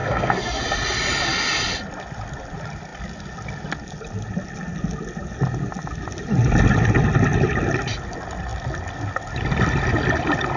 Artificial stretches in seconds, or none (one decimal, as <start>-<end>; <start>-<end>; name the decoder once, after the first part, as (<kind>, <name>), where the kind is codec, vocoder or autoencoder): 0.0-0.6 (codec, SNAC)